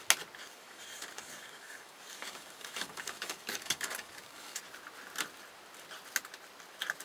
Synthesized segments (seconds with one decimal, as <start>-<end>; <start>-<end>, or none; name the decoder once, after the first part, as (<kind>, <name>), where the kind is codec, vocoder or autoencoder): 0.4-4.6 (codec, DAC)